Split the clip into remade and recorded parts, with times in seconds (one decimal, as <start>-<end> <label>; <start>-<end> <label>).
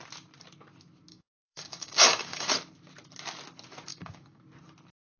0.0-1.1 recorded; 1.1-2.5 remade; 2.5-3.9 recorded; 3.9-4.4 remade; 4.4-5.2 recorded